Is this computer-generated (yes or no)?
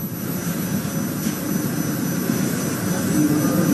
no